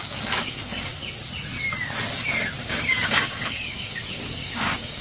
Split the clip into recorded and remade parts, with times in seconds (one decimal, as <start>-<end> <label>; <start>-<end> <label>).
0.0-0.9 remade; 0.9-2.6 recorded; 2.6-5.0 remade